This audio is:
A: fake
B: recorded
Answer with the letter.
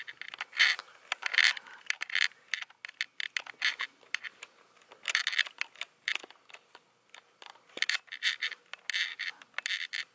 B